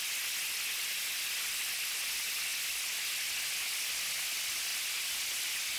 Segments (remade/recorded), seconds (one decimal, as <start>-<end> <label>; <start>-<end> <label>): 0.0-5.8 recorded